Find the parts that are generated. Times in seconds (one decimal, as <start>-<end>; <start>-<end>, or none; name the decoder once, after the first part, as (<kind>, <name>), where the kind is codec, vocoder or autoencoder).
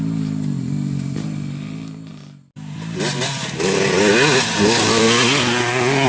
none